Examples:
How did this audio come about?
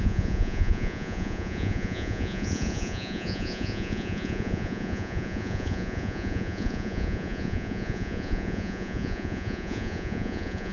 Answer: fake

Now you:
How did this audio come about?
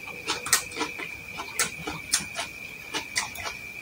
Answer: real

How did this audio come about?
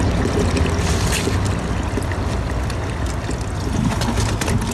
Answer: real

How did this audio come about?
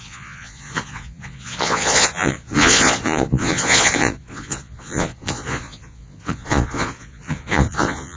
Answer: fake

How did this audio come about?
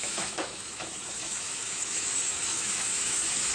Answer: fake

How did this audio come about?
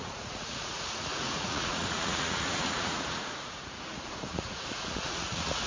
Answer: fake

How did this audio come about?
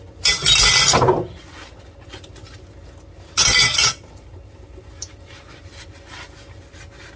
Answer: real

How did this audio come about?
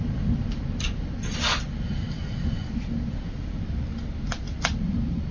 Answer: real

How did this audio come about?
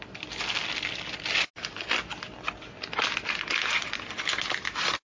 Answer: real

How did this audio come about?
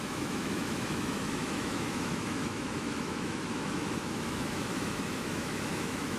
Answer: fake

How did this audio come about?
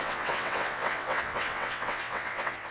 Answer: fake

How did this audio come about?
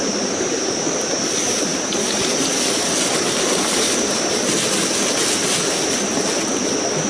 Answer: real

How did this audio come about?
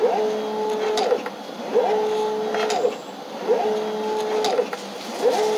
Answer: real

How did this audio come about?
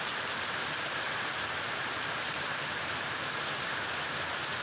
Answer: fake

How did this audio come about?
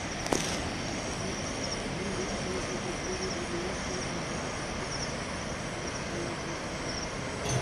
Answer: real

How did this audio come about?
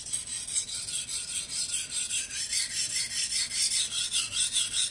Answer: real